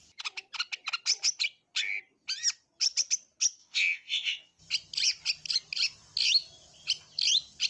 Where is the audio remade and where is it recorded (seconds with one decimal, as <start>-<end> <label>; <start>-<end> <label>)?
0.0-3.6 recorded; 3.6-4.6 remade; 4.6-7.7 recorded